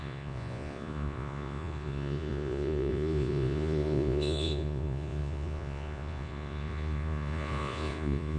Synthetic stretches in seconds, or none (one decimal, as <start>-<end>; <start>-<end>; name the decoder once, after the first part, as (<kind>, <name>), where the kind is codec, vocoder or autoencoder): 0.0-8.4 (vocoder, Vocos)